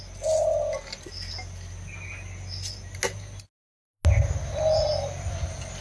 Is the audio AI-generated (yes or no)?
no